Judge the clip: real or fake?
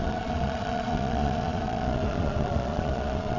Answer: fake